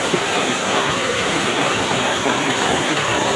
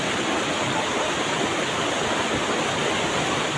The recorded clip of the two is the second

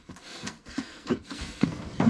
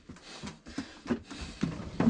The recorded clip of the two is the second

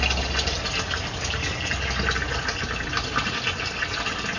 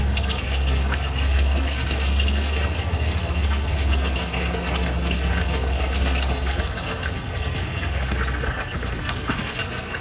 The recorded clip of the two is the first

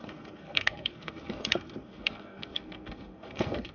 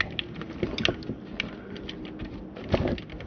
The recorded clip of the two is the second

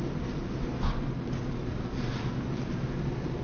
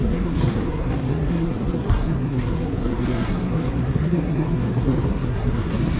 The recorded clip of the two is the first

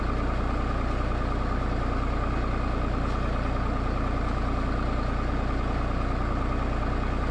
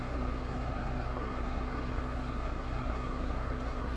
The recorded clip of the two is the first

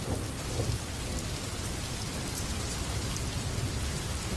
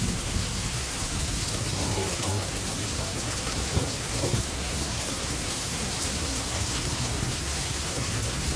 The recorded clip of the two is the first